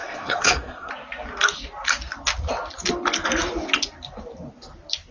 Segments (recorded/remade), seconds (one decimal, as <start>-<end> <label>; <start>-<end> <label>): 0.0-0.9 remade; 0.9-5.1 recorded